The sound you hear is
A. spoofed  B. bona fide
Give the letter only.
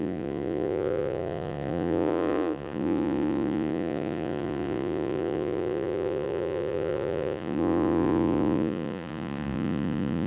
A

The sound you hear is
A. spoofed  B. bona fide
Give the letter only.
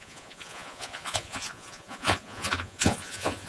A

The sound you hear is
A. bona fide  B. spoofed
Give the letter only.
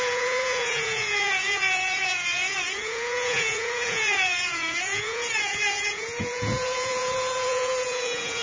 B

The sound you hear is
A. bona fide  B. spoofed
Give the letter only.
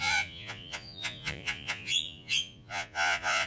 B